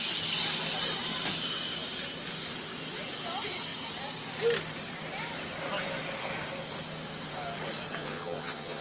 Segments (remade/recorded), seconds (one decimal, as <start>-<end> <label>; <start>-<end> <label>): 0.0-8.0 recorded; 8.0-8.8 remade